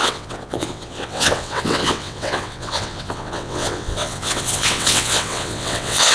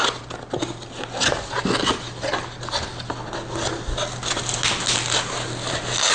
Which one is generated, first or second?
first